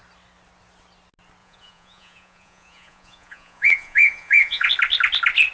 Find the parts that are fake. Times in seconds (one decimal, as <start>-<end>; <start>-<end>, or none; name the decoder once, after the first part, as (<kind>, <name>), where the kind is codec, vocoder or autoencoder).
1.4-4.7 (vocoder, Vocos)